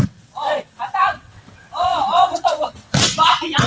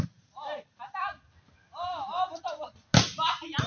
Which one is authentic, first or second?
second